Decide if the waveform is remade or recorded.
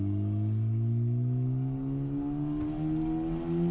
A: recorded